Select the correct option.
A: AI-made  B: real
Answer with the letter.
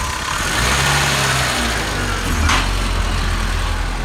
B